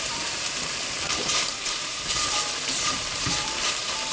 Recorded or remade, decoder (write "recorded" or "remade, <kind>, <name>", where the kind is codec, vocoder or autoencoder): remade, vocoder, BigVGAN v2